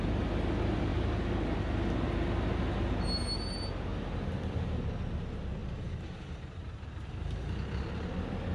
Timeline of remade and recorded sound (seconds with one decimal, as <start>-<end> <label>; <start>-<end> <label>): 0.0-3.9 recorded; 3.9-5.0 remade; 5.0-5.6 recorded; 5.6-7.0 remade; 7.0-8.5 recorded